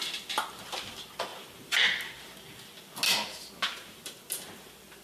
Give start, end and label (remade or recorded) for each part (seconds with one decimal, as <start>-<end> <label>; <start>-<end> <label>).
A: 0.0-5.0 recorded